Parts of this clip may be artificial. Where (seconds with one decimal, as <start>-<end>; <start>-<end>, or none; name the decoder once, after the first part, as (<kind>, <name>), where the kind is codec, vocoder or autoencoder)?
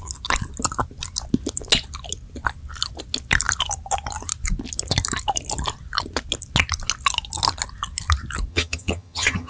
8.5-9.5 (vocoder, HiFi-GAN)